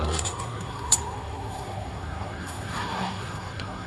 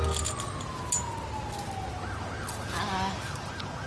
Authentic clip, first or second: second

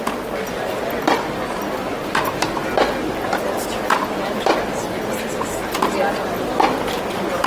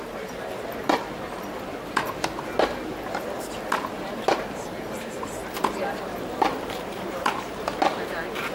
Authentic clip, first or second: first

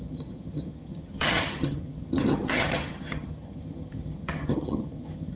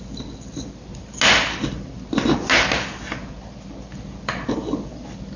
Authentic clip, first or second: second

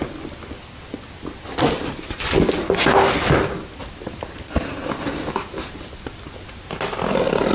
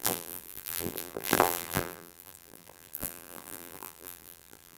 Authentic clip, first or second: first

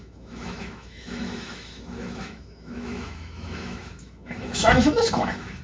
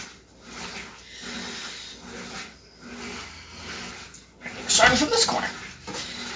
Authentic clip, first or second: second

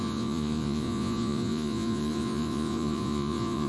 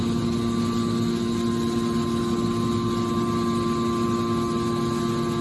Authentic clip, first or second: second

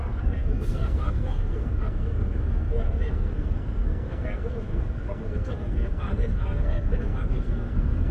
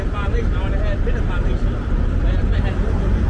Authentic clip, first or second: second